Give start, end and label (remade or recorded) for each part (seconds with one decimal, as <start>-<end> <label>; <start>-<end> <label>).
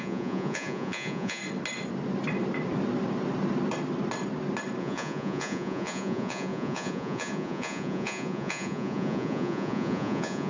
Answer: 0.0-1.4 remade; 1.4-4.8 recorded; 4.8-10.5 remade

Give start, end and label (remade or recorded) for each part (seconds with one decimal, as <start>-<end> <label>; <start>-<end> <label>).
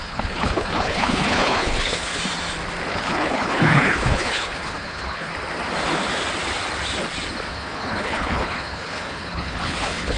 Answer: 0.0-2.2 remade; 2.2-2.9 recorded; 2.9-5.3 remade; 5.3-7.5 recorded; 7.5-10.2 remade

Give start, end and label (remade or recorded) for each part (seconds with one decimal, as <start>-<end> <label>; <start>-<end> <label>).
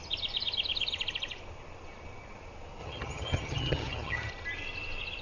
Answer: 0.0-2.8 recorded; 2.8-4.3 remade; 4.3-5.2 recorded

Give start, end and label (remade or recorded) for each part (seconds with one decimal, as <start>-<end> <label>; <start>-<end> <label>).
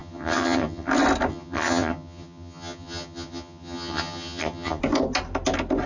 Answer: 0.0-0.9 remade; 0.9-1.3 recorded; 1.3-4.8 remade; 4.8-5.9 recorded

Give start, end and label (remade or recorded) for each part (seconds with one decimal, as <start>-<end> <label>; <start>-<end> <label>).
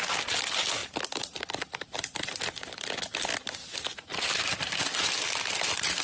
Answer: 0.0-6.0 recorded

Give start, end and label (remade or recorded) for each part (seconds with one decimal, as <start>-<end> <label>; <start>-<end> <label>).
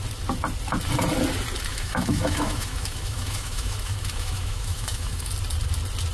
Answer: 0.0-1.7 recorded; 1.7-5.3 remade; 5.3-6.1 recorded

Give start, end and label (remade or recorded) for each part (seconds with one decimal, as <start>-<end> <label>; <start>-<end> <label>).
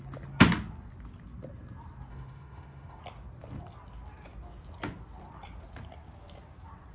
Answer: 0.0-2.1 recorded; 2.1-3.0 remade; 3.0-6.9 recorded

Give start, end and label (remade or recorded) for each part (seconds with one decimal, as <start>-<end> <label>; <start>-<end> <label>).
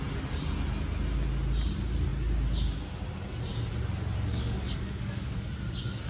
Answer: 0.0-4.3 recorded; 4.3-5.5 remade; 5.5-6.1 recorded